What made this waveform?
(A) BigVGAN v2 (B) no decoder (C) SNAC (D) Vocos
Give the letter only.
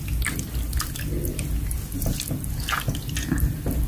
B